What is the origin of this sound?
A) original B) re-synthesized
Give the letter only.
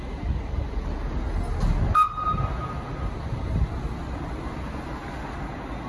A